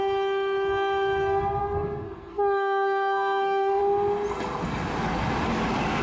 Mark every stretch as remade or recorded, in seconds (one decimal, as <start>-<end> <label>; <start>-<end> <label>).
0.0-1.6 recorded; 1.6-3.8 remade; 3.8-6.0 recorded